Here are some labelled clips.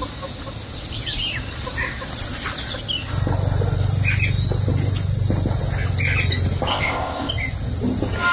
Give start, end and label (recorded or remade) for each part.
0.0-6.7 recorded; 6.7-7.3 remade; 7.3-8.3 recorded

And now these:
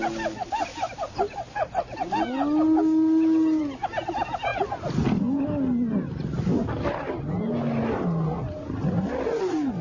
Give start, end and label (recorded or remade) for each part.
0.0-9.8 recorded